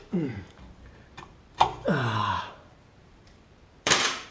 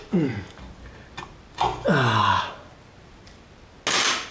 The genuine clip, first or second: second